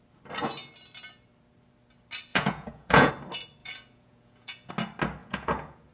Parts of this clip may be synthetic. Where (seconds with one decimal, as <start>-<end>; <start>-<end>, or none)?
2.3-3.1; 3.6-4.7; 5.2-5.9